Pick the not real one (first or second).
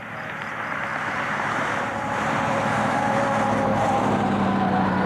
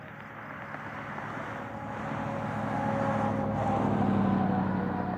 first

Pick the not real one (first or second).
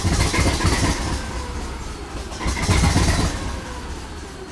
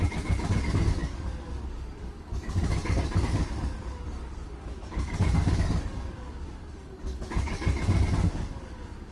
second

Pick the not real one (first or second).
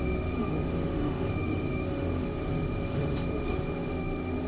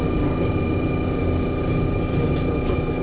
first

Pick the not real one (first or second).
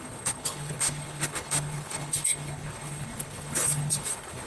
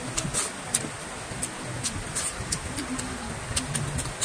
first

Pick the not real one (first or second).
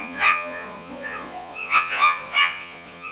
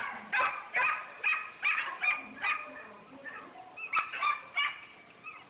first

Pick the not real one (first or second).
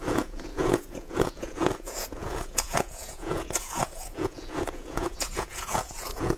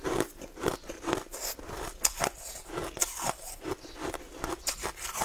first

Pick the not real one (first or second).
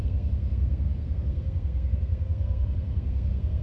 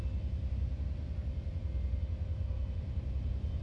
first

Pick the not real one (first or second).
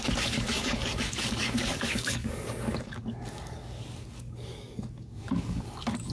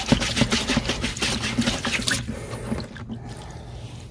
first